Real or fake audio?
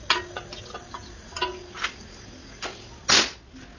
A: real